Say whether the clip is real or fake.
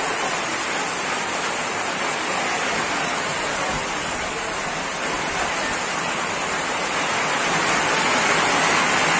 real